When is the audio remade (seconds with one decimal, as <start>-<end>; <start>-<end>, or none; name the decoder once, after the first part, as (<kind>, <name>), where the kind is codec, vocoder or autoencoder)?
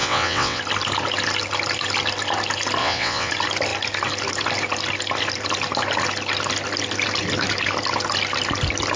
0.0-0.6 (vocoder, WaveNeXt); 2.8-3.3